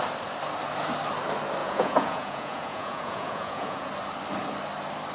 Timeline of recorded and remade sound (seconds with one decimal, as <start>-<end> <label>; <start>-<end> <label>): 0.0-1.6 recorded; 1.6-3.9 remade; 3.9-5.1 recorded